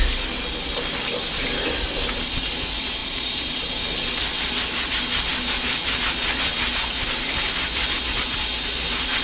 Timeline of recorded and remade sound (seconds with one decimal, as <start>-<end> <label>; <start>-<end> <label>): 0.0-3.0 recorded; 3.0-3.6 remade; 3.6-5.3 recorded; 5.3-6.0 remade; 6.0-9.2 recorded